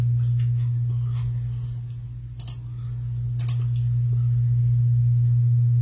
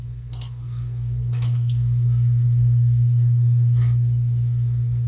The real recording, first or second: first